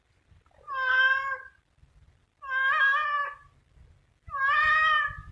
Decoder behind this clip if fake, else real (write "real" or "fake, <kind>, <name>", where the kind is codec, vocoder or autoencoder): real